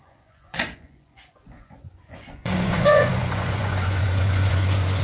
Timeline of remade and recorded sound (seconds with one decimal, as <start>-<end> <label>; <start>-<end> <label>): 0.0-5.0 remade